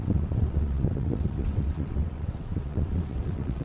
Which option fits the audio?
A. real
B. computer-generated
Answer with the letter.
B